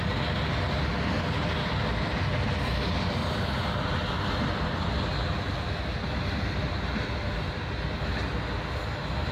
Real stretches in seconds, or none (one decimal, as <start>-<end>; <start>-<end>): 0.0-9.3